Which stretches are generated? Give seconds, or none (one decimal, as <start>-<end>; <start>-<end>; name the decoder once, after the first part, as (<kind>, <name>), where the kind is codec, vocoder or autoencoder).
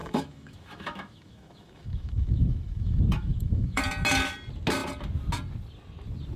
0.0-3.8 (autoencoder, DAC-VAE)